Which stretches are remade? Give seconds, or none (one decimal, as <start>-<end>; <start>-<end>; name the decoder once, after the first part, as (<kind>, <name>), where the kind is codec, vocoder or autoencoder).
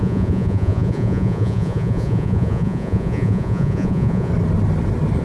0.0-4.3 (vocoder, Vocos)